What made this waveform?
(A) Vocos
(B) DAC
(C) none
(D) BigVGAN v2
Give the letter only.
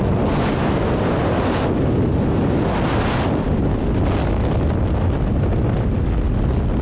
C